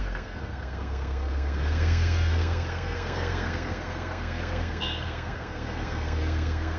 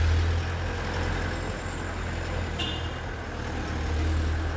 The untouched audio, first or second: second